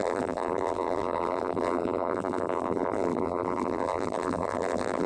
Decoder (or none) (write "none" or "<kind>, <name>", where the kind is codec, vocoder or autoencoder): vocoder, BigVGAN v2